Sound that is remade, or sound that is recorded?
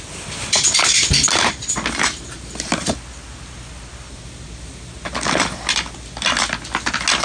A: recorded